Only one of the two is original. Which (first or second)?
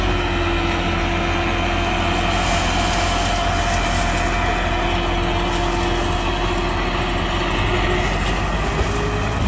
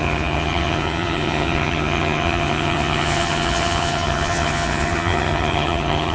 first